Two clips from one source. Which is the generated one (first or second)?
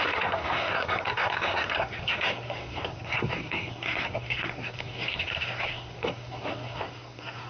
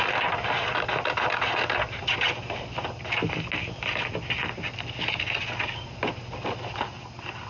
first